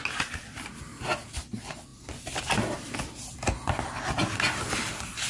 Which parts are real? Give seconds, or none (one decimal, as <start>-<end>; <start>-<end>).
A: 0.0-5.3